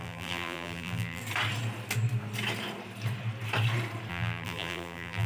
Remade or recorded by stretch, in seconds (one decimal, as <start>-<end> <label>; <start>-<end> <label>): 0.0-1.2 remade; 1.2-4.1 recorded; 4.1-5.3 remade

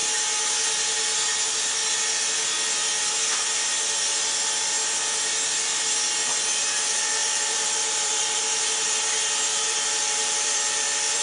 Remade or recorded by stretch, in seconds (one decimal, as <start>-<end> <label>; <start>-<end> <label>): 0.0-7.2 recorded; 7.2-8.4 remade; 8.4-9.5 recorded; 9.5-11.2 remade

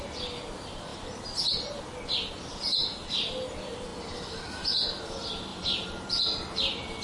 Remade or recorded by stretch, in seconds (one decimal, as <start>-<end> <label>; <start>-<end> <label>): 0.0-5.5 recorded; 5.5-6.1 remade; 6.1-7.0 recorded

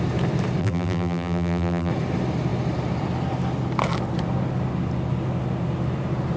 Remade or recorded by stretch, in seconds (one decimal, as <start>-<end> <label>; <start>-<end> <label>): 0.0-0.6 recorded; 0.6-1.9 remade; 1.9-6.4 recorded

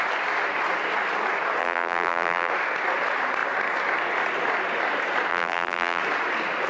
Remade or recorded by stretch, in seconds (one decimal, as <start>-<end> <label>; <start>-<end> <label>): 0.0-1.6 recorded; 1.6-2.5 remade; 2.5-5.3 recorded; 5.3-6.0 remade; 6.0-6.7 recorded

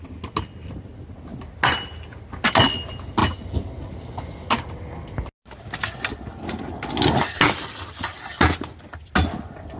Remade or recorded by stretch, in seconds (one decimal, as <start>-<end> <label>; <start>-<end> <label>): 0.0-9.8 recorded